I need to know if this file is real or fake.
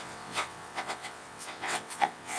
fake